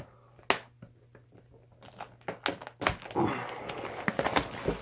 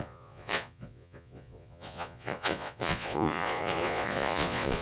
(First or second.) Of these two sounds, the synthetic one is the second